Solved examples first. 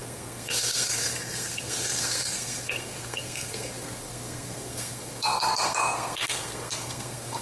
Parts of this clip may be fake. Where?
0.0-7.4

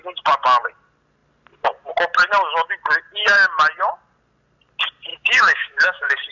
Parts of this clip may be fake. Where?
5.1-6.3

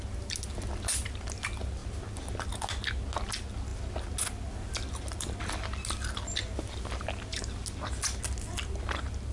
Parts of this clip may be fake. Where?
none

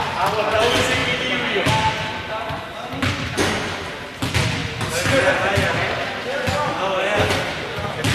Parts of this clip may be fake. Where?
none

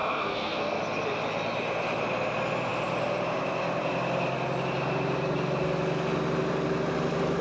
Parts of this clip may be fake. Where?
0.0-0.8